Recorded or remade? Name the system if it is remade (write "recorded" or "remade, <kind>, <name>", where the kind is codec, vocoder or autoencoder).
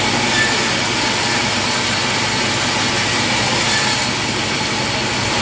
recorded